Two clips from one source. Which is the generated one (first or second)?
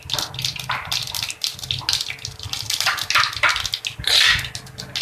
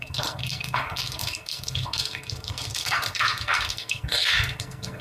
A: second